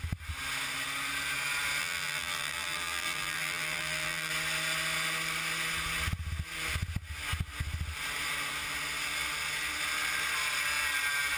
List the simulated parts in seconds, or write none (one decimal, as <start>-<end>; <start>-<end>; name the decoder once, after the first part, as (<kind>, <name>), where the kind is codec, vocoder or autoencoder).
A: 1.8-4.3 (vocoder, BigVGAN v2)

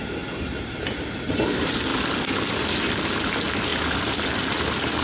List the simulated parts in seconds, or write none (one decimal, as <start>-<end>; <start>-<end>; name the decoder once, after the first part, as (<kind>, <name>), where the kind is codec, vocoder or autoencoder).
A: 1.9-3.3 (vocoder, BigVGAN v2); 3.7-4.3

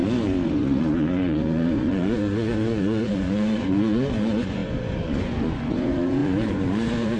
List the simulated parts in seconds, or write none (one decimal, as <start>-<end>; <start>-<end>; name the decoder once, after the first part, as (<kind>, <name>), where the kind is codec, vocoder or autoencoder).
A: 0.0-7.2 (vocoder, Vocos)